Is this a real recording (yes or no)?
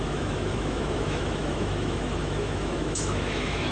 no